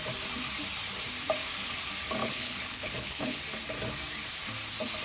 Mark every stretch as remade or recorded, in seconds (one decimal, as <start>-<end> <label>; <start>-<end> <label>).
0.0-2.2 recorded; 2.2-3.4 remade; 3.4-5.0 recorded